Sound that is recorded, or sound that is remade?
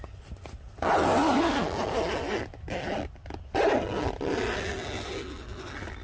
recorded